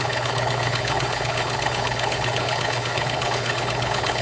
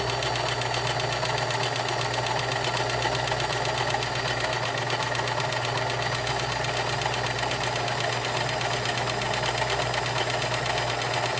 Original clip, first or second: second